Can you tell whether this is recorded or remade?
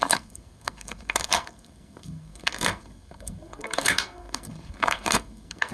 remade